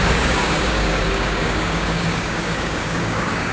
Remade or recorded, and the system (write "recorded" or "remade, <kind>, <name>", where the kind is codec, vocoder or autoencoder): remade, codec, DAC